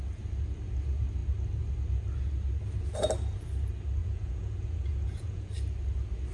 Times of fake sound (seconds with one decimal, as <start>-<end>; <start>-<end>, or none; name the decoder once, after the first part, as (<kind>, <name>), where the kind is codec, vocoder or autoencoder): 4.0-5.5 (vocoder, Vocos)

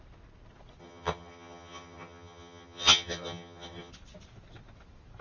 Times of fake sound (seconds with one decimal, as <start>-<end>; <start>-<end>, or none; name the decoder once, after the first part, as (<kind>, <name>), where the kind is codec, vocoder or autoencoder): 0.8-3.9 (vocoder, HiFi-GAN)

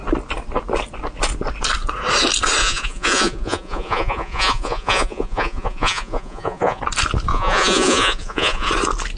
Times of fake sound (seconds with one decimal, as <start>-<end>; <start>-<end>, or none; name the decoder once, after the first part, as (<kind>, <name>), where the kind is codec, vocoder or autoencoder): 2.6-6.8 (vocoder, Vocos); 7.3-8.7

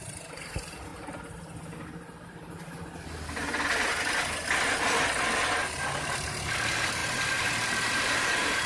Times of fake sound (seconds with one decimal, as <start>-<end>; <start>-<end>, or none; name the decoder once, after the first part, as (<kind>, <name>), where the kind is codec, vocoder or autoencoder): 0.0-0.9 (vocoder, BigVGAN v2); 6.1-8.7

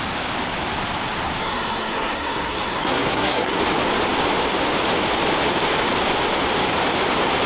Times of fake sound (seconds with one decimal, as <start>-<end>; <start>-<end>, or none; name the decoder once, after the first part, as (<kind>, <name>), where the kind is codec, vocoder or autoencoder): 1.4-3.6 (codec, SNAC)